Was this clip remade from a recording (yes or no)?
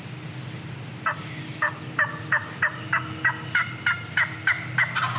no